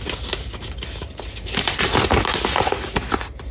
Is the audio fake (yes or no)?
no